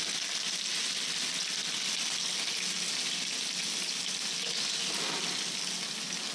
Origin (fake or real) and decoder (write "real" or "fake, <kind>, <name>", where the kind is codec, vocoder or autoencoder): real